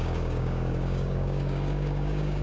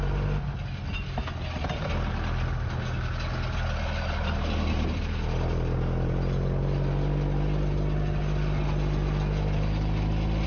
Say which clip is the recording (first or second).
second